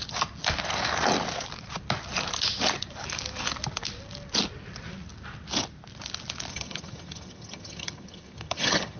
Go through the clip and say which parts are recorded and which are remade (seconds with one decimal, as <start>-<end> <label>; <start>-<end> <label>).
0.0-6.5 recorded; 6.5-9.0 remade